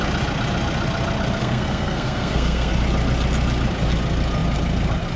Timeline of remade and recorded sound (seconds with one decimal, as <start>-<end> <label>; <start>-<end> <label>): 0.0-1.4 recorded; 1.4-2.7 remade; 2.7-5.2 recorded